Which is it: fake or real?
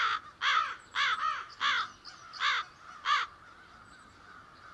real